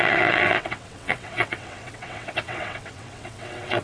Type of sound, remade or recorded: remade